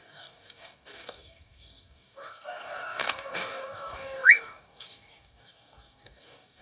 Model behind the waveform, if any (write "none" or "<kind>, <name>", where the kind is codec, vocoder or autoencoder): codec, DAC